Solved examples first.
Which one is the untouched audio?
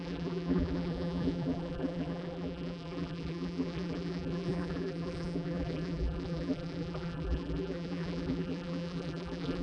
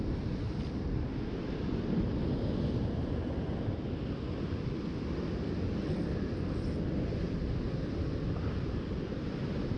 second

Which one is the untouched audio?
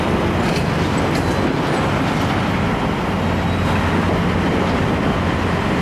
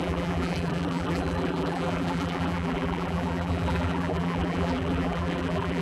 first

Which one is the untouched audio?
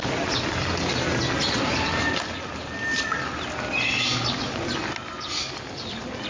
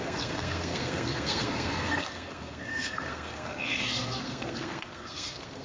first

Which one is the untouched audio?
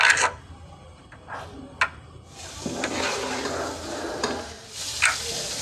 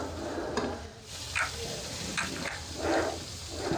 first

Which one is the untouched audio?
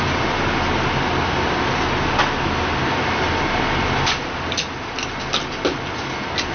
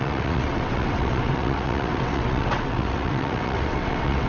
first